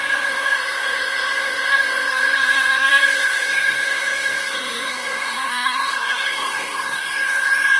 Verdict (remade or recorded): remade